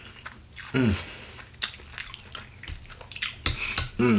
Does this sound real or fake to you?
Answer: real